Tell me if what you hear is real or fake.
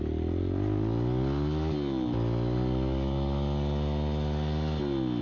real